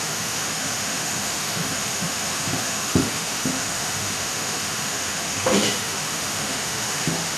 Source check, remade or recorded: remade